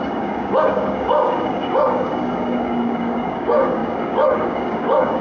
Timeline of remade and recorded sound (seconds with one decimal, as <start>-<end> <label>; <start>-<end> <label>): 0.0-5.2 remade

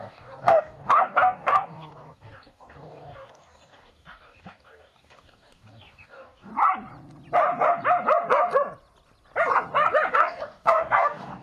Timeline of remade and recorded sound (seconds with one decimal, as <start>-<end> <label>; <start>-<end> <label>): 0.0-6.5 remade; 6.5-10.1 recorded; 10.1-11.4 remade

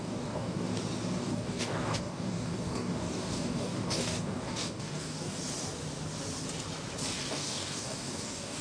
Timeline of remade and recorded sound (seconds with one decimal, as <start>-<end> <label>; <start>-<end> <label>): 0.0-0.7 remade; 0.7-1.2 recorded; 1.2-5.4 remade; 5.4-7.3 recorded; 7.3-8.6 remade

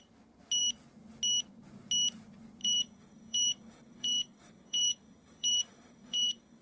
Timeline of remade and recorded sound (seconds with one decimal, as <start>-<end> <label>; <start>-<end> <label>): 0.0-2.6 recorded; 2.6-6.6 remade

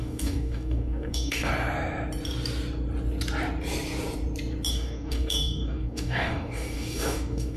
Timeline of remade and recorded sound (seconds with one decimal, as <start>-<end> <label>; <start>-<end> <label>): 0.0-1.5 remade; 1.5-4.7 recorded; 4.7-7.6 remade

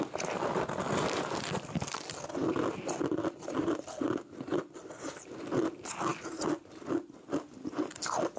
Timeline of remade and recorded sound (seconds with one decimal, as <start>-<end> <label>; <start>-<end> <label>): 0.0-8.4 recorded

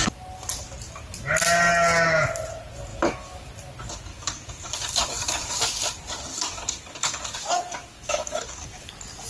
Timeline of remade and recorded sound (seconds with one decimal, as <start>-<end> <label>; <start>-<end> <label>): 0.0-2.9 recorded; 2.9-3.5 remade; 3.5-4.1 recorded; 4.1-5.8 remade; 5.8-6.3 recorded; 6.3-8.9 remade; 8.9-9.3 recorded